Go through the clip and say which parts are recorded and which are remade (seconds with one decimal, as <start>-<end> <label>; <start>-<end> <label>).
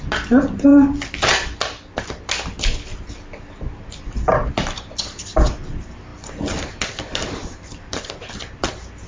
0.0-9.1 recorded